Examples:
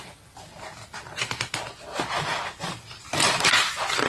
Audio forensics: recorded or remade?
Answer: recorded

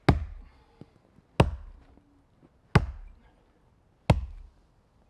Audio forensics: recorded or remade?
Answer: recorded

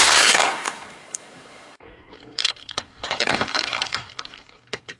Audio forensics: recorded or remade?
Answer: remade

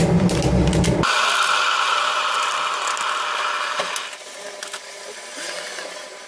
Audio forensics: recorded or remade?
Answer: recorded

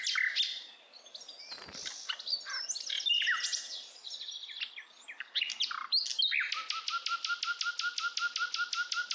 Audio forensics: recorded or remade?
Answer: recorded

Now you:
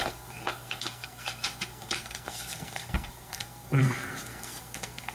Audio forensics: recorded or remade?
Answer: remade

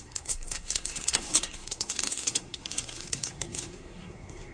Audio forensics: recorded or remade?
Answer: remade